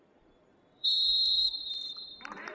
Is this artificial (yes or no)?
yes